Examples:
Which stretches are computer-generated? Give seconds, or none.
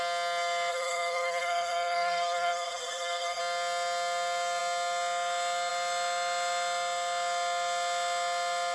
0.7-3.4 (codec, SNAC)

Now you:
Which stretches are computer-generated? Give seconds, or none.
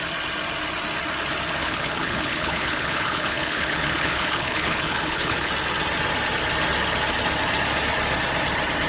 1.6-5.5 (codec, HILCodec)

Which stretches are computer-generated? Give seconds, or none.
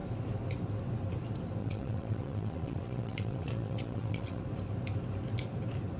1.6-4.4 (vocoder, WaveNeXt)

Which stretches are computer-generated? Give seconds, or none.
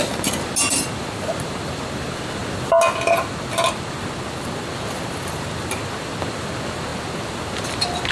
none